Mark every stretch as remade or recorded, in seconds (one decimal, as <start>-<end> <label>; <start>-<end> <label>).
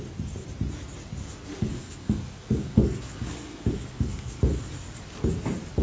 0.0-1.2 recorded; 1.2-4.7 remade; 4.7-5.8 recorded